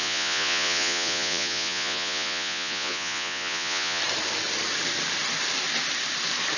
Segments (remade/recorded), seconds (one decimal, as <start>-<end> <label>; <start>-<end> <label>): 0.0-4.0 remade; 4.0-6.6 recorded